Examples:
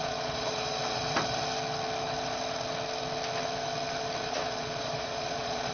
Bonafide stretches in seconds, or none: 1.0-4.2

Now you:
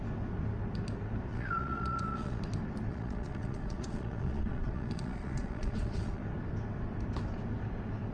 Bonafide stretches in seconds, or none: 0.0-1.3; 2.4-2.9; 6.2-8.1

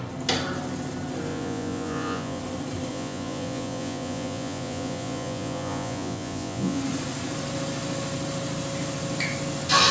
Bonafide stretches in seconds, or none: 0.0-1.3; 2.4-2.9; 6.8-9.9

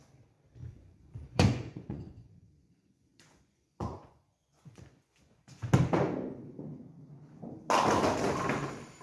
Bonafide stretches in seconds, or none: 0.0-0.6; 5.7-9.0

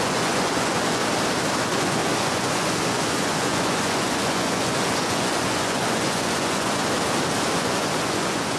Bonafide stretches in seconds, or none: 1.0-1.6; 6.8-7.4

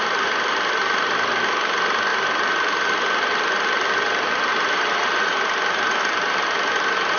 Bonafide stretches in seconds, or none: 0.0-7.2

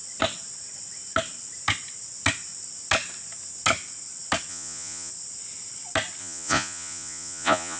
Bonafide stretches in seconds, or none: 0.0-4.5; 5.1-6.2